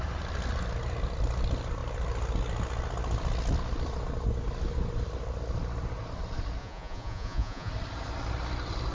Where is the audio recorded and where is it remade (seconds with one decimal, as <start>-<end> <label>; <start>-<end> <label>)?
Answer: 0.0-6.6 recorded; 6.6-7.7 remade; 7.7-8.9 recorded